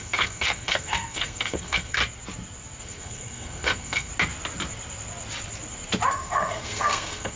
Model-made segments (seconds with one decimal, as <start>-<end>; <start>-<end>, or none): 0.0-2.0; 2.8-4.1; 6.1-7.4